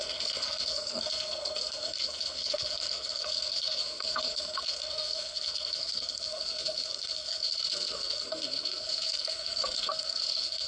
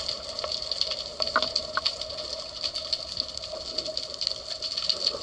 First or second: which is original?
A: second